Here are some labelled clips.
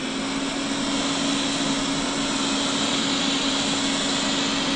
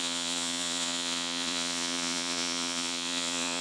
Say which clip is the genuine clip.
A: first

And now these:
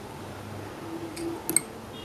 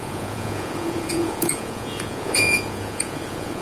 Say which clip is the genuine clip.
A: first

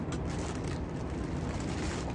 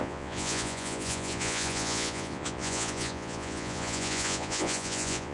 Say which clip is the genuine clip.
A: first